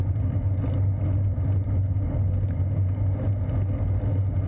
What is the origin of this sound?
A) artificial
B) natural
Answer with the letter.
B